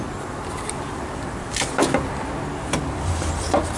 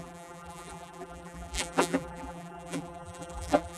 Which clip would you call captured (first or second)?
first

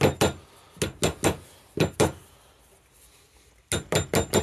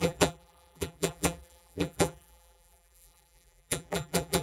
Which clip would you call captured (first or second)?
first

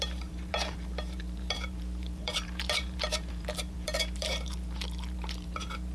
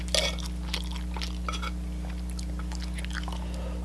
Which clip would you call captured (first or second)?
second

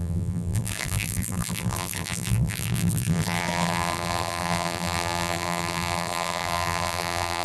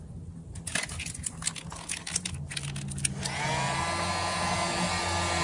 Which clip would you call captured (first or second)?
second